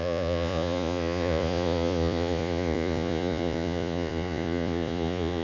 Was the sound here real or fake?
fake